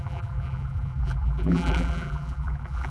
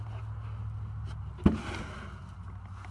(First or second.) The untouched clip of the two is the second